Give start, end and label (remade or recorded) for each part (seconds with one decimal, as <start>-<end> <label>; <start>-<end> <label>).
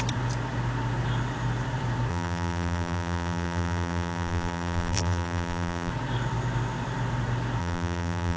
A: 0.0-2.1 recorded; 2.1-5.9 remade; 5.9-7.6 recorded; 7.6-8.4 remade